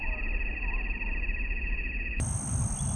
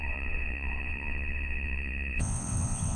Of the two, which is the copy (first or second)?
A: second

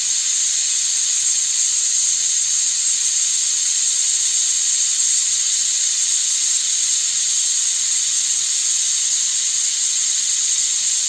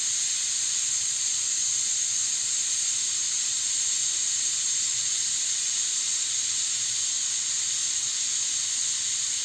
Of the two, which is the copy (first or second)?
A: first